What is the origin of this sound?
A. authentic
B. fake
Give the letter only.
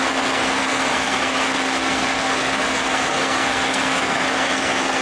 B